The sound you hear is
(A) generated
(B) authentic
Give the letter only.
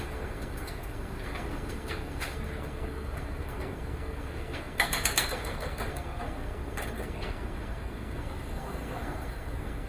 A